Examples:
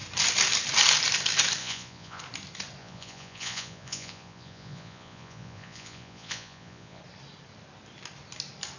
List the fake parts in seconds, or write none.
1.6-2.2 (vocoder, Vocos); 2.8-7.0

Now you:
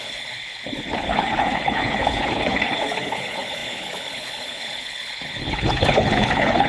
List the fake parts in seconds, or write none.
0.0-6.7 (codec, HILCodec)

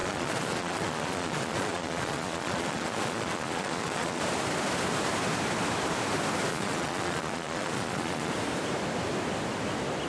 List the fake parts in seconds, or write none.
0.0-4.2 (vocoder, Vocos); 6.5-8.3

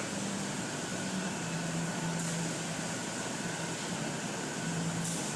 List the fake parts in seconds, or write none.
none

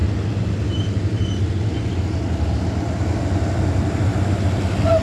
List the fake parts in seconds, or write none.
none

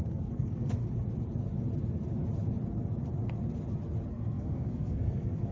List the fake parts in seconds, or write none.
0.0-0.8 (codec, SNAC); 4.1-5.5

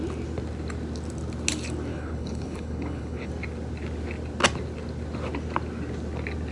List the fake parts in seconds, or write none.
1.9-3.3 (codec, HILCodec)

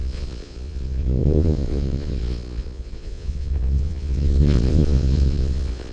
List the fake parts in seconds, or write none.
0.0-5.9 (vocoder, Vocos)